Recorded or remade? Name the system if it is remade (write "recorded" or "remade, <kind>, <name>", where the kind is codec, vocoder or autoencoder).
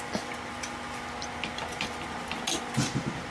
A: recorded